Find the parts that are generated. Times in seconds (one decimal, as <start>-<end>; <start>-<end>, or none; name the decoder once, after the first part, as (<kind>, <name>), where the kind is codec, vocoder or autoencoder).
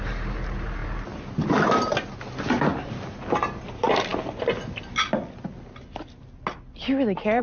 none